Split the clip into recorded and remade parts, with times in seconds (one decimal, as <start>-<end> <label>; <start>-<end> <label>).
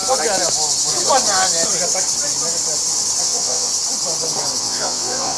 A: 0.0-3.2 recorded; 3.2-3.7 remade; 3.7-4.6 recorded; 4.6-5.4 remade